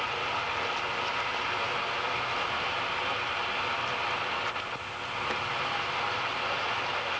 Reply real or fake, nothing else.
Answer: real